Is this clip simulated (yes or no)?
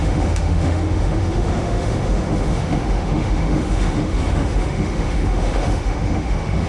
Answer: yes